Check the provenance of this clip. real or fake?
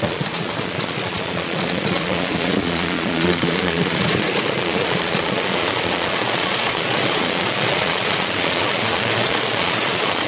fake